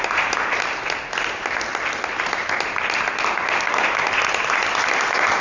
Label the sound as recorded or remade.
recorded